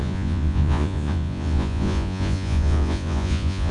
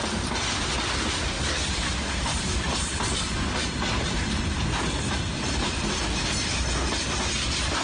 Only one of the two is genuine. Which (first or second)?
second